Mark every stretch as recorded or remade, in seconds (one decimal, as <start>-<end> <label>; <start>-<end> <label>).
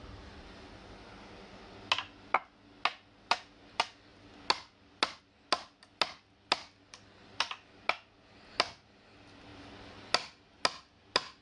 0.0-11.4 recorded